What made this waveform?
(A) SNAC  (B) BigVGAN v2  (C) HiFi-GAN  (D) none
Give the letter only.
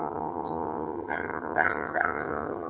C